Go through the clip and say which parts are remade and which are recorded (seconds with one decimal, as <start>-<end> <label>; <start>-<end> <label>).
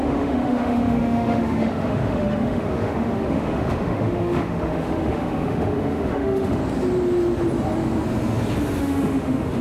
0.0-6.6 remade; 6.6-8.8 recorded; 8.8-9.6 remade